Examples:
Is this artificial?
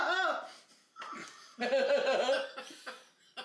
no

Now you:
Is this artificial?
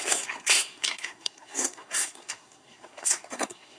yes